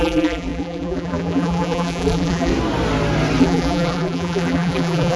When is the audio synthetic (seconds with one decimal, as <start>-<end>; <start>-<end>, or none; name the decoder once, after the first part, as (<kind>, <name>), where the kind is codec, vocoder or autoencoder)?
0.0-2.5 (vocoder, BigVGAN v2); 3.4-5.2